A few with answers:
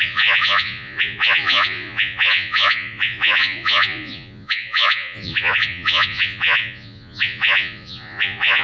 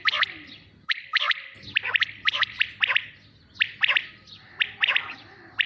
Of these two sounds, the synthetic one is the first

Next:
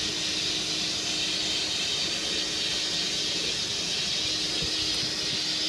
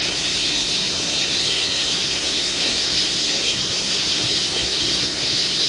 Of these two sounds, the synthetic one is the second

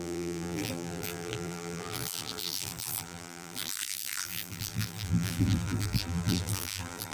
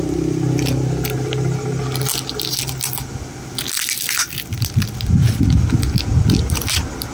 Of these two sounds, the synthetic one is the first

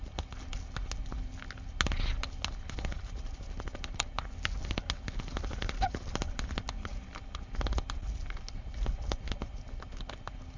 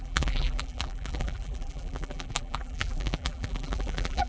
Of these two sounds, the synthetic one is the second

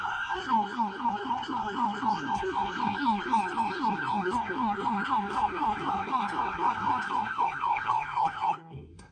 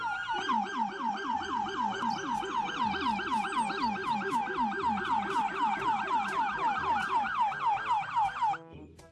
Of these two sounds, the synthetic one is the first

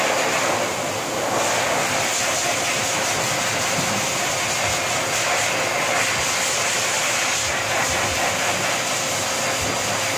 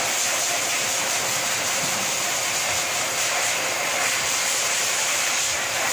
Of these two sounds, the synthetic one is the second